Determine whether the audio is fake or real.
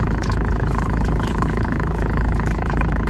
fake